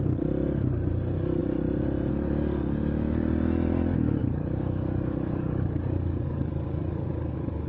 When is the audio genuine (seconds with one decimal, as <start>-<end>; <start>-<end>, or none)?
0.0-4.2